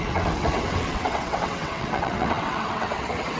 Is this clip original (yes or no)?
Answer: no